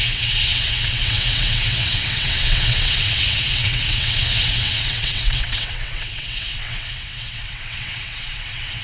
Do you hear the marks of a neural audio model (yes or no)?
yes